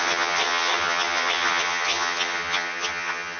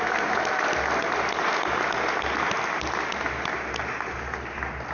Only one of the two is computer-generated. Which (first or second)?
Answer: first